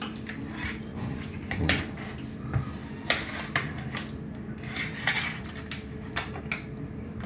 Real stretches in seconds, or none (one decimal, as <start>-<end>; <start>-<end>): 0.0-0.9; 1.8-7.3